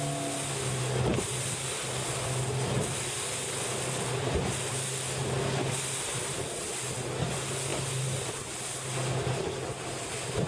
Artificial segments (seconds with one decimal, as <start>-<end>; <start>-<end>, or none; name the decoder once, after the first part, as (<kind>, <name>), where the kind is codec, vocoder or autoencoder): 1.1-4.7 (vocoder, BigVGAN v2)